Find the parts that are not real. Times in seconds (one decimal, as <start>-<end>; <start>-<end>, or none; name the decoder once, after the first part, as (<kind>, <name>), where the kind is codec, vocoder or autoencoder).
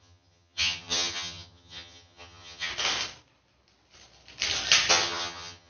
0.0-2.7 (vocoder, HiFi-GAN); 4.9-5.7